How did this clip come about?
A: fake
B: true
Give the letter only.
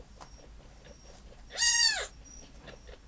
B